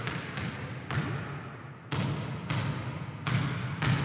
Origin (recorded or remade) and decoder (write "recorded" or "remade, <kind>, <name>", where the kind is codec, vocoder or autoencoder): recorded